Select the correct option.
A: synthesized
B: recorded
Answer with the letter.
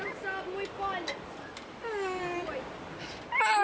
B